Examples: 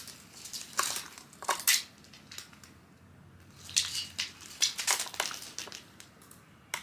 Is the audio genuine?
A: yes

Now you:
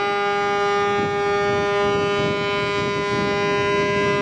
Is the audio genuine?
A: yes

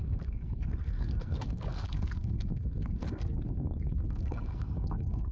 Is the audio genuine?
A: no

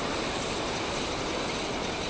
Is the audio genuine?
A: yes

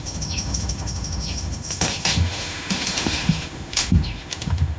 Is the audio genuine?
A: no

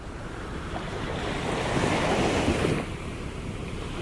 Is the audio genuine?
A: no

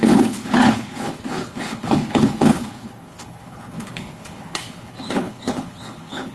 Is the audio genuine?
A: no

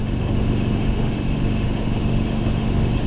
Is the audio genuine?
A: no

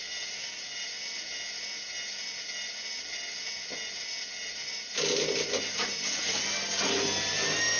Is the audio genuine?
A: yes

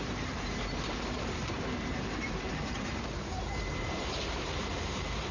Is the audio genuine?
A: no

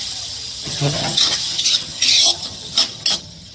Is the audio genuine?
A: no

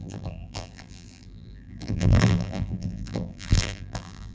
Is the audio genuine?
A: no